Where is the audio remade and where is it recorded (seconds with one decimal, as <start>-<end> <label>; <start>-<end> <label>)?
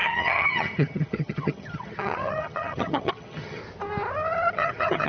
0.0-3.6 remade; 3.6-4.5 recorded; 4.5-5.1 remade